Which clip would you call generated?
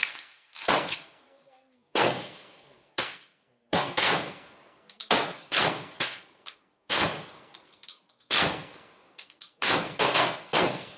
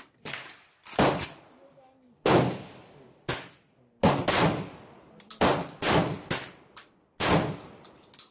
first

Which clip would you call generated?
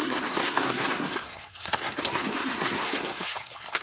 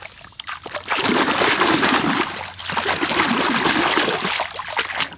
first